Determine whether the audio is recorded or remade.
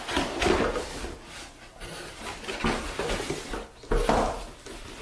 recorded